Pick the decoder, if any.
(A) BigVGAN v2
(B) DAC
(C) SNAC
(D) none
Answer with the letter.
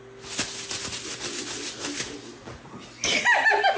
D